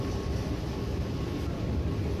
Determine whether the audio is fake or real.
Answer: real